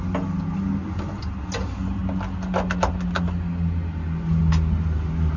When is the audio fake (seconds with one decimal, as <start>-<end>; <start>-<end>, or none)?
none